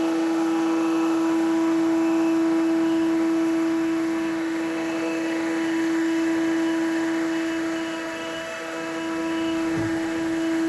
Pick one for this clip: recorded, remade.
remade